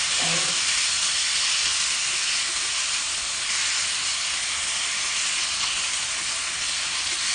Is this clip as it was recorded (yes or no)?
yes